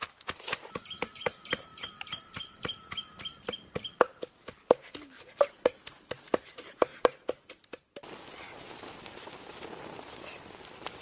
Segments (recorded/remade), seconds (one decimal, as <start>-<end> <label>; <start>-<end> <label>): 0.0-11.0 recorded